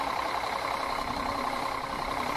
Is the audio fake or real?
real